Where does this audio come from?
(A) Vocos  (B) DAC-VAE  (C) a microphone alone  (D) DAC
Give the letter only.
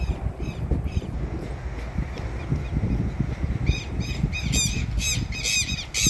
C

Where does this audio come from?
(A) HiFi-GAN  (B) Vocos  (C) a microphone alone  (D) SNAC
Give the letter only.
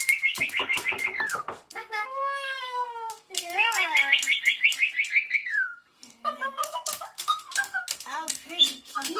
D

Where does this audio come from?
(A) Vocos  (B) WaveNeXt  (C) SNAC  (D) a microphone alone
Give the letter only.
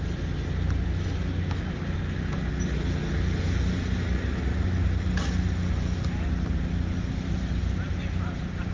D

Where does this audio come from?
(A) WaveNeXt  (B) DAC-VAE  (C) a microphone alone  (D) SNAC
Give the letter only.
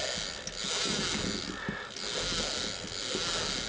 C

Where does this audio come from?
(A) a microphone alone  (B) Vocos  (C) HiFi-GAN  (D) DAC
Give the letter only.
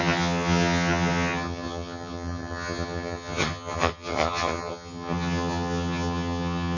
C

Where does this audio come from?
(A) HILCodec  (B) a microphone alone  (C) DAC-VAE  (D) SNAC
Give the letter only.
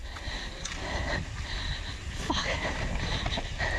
B